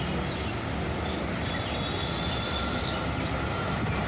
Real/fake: real